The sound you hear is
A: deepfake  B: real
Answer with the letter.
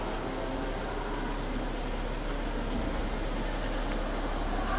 B